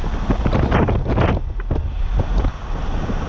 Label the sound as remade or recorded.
recorded